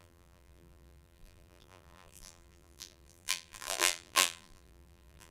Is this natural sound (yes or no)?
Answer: no